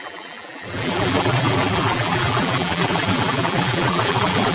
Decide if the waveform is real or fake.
fake